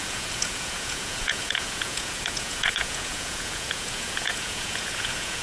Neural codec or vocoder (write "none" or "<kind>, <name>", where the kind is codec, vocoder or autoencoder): vocoder, Vocos